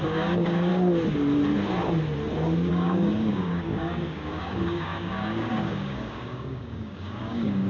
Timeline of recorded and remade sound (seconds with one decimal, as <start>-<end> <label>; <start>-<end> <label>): 0.0-0.7 remade; 0.7-2.7 recorded; 2.7-7.7 remade